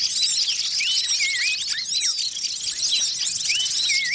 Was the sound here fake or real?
real